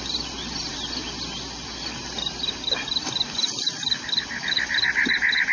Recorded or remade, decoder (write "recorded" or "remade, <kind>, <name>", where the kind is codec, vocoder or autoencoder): recorded